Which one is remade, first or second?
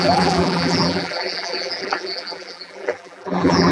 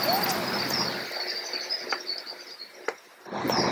first